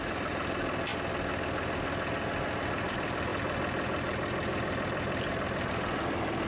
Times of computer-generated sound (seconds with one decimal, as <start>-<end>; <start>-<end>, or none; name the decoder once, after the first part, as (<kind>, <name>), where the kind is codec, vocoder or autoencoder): 0.0-0.9 (vocoder, BigVGAN v2); 2.7-6.5